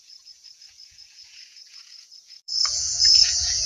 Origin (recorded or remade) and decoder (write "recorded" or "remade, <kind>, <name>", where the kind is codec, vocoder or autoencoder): remade, vocoder, Vocos